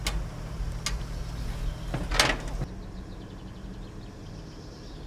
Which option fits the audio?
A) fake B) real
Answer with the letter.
B